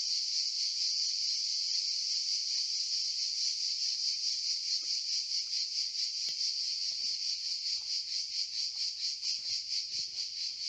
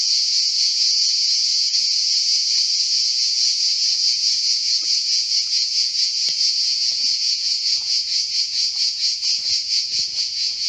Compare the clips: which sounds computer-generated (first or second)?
second